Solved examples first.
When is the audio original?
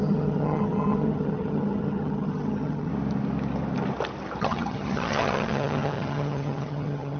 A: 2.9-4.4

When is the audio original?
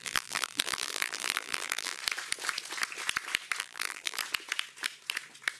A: 2.0-3.6; 4.2-5.6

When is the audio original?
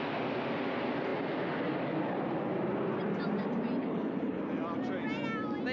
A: 0.0-3.8; 4.4-5.7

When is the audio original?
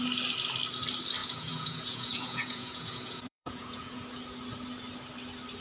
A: 0.0-1.2; 4.0-5.6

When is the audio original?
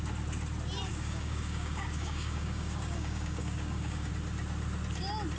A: 0.0-0.9; 4.1-5.4